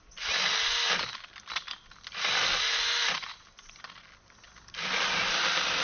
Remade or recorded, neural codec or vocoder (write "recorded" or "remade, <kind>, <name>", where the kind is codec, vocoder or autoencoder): recorded